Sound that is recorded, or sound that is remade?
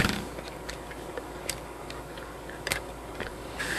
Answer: remade